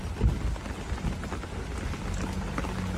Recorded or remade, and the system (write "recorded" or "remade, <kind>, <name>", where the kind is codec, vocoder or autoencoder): recorded